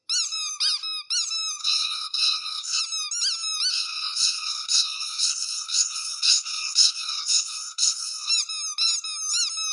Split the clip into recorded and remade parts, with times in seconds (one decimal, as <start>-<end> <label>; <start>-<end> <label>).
0.0-1.6 recorded; 1.6-2.8 remade; 2.8-3.7 recorded; 3.7-8.3 remade; 8.3-9.7 recorded